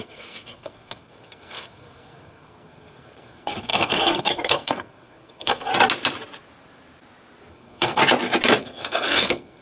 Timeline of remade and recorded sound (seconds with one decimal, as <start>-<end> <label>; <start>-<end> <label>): 0.0-5.7 remade; 5.7-7.5 recorded; 7.5-8.0 remade; 8.0-8.6 recorded; 8.6-9.6 remade